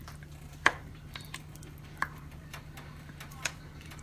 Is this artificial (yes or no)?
yes